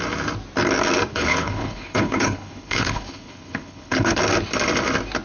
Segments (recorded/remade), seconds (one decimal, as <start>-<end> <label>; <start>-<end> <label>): 0.0-1.1 recorded; 1.1-4.2 remade; 4.2-5.2 recorded